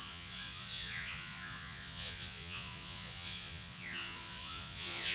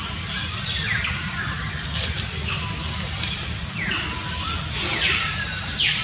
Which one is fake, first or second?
first